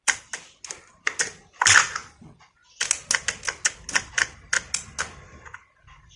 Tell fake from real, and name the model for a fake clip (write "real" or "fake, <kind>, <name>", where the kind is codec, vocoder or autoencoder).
real